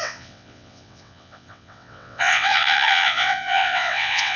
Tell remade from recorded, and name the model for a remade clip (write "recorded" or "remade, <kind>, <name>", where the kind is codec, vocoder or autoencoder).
remade, vocoder, WaveNeXt